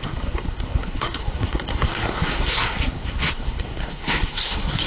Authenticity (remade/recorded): remade